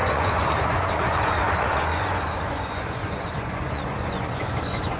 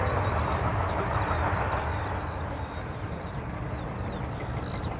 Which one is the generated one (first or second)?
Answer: first